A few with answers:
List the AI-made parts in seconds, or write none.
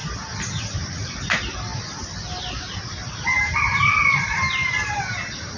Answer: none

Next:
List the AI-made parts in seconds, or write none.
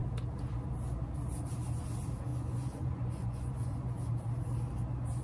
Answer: 2.3-3.9 (vocoder, Vocos)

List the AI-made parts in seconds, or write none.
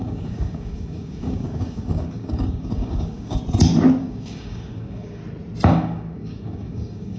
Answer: 0.0-3.4 (codec, DAC); 4.0-5.2; 5.7-7.2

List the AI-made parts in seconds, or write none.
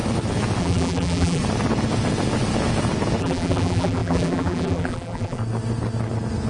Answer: 0.6-1.4 (vocoder, BigVGAN v2); 3.2-5.4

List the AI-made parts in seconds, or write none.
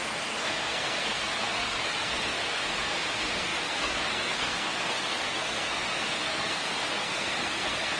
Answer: 0.0-8.0 (codec, SNAC)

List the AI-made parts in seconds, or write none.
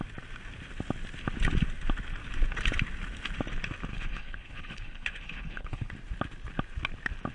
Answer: 3.9-5.9 (codec, HILCodec)